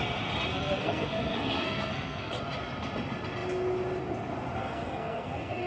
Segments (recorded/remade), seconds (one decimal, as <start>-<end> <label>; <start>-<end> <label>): 0.0-0.5 recorded; 0.5-2.3 remade; 2.3-4.6 recorded; 4.6-5.7 remade